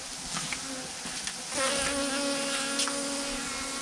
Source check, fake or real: real